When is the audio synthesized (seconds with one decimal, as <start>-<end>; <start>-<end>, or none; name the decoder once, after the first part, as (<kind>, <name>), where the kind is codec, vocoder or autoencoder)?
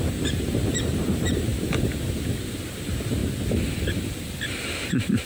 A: 0.0-1.5 (vocoder, BigVGAN v2); 2.8-3.2; 4.6-5.3